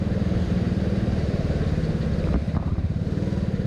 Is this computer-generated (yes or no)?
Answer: no